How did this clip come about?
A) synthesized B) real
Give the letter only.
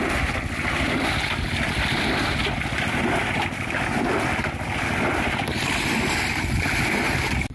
B